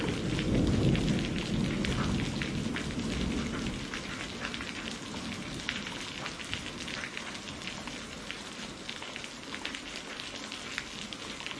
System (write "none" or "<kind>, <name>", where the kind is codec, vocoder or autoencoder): none